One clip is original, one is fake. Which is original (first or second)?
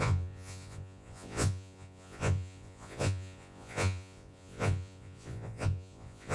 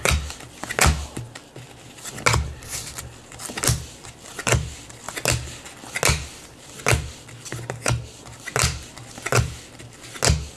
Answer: second